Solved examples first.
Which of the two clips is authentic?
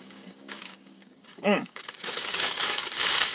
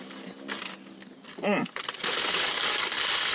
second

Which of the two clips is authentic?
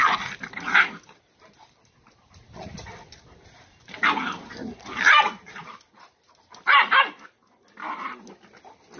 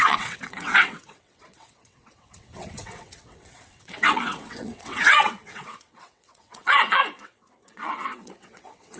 first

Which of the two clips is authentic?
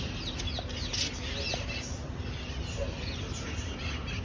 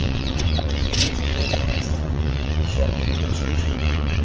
first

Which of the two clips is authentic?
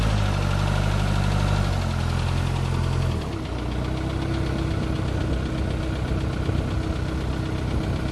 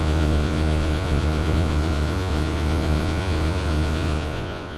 first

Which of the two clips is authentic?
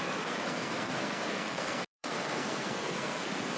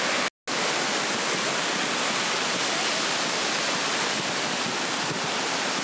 second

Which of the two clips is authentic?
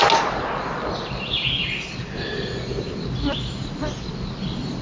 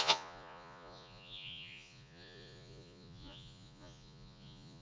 first